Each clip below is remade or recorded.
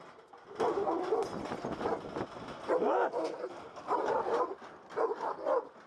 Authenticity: recorded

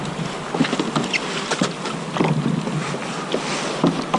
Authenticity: recorded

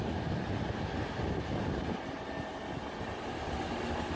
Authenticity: recorded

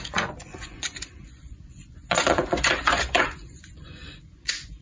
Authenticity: remade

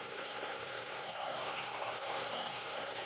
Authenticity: remade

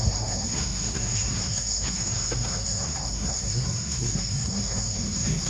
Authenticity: remade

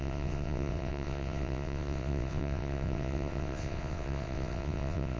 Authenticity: remade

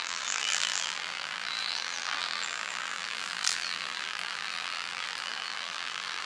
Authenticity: remade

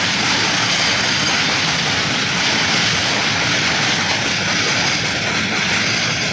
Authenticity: recorded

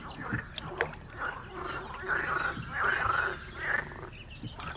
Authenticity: recorded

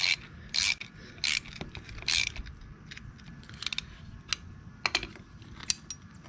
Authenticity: recorded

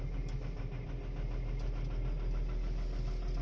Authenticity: recorded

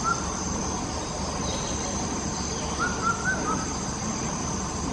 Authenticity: recorded